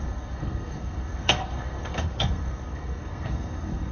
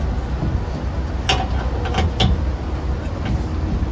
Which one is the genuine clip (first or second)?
second